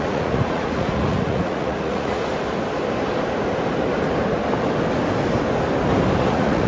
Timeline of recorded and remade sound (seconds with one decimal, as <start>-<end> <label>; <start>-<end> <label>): 0.0-2.2 remade; 2.2-6.2 recorded; 6.2-6.7 remade